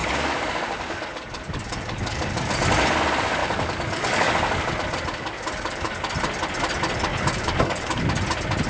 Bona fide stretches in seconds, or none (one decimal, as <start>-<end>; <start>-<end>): 2.5-3.4; 4.6-5.1; 6.1-7.1; 8.0-8.7